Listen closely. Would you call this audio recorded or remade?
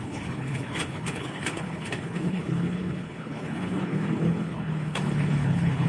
remade